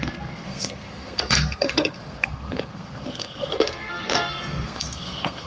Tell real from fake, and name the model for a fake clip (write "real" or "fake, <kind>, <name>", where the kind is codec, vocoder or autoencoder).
fake, codec, SNAC